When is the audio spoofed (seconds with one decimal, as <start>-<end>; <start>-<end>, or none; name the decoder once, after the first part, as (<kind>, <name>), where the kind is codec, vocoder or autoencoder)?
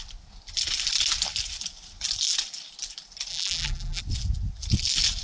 3.3-4.0 (vocoder, BigVGAN v2)